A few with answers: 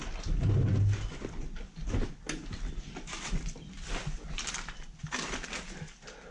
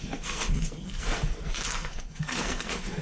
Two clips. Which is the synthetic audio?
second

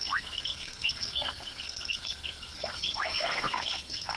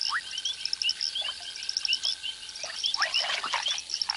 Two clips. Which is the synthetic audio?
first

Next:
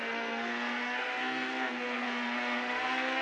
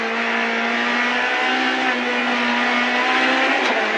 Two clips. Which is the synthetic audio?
first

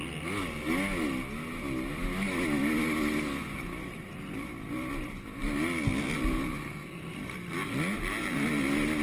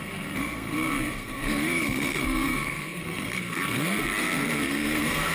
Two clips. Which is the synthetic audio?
second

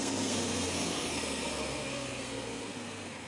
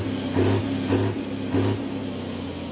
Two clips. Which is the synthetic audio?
first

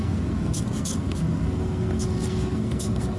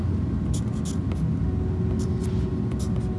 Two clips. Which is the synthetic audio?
first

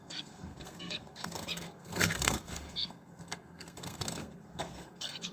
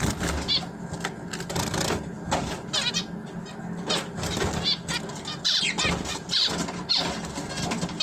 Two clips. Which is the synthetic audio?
first